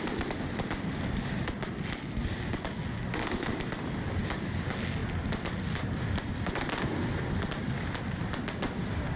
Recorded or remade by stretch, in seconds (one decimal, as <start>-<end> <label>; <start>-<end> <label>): 0.0-9.2 recorded